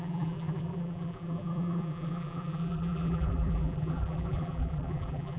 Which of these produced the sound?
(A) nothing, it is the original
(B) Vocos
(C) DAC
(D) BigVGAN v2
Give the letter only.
D